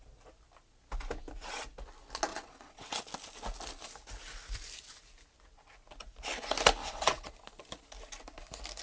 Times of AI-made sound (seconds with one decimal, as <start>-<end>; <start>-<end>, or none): 2.3-3.0; 6.8-7.3